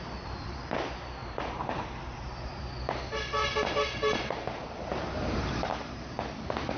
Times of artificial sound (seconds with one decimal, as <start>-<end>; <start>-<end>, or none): 1.2-2.6; 3.4-6.8